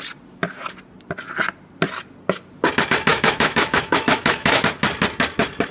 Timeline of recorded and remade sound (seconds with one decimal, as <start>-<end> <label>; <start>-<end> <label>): 0.0-3.1 recorded; 3.1-4.6 remade; 4.6-5.7 recorded